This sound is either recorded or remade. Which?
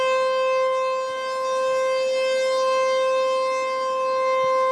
recorded